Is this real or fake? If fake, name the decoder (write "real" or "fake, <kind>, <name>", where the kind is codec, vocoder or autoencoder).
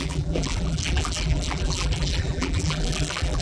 fake, vocoder, BigVGAN v2